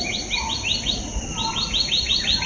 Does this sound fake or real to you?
real